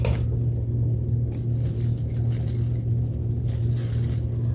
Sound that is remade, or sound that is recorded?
recorded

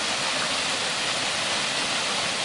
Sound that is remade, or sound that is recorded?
recorded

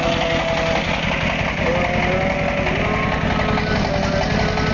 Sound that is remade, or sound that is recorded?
recorded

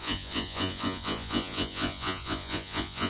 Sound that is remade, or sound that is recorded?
remade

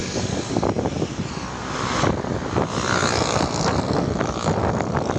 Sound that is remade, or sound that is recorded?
recorded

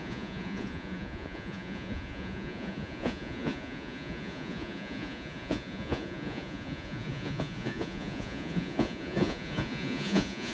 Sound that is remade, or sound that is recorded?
remade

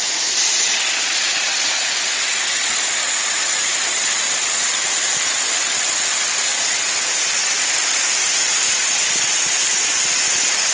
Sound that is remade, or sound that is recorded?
recorded